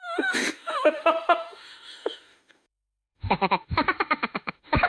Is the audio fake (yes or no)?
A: yes